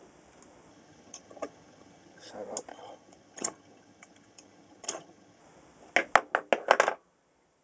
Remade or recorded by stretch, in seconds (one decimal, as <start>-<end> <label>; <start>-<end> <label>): 0.0-0.7 recorded; 0.7-2.3 remade; 2.3-2.7 recorded; 2.7-5.4 remade; 5.4-7.6 recorded